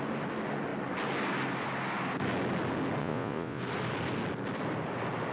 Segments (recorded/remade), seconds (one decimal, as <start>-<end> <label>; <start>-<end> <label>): 0.0-3.0 recorded; 3.0-3.6 remade; 3.6-5.3 recorded